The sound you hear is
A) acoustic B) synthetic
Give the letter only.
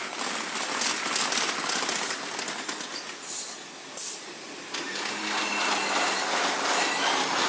A